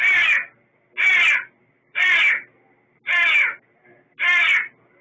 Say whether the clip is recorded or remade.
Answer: recorded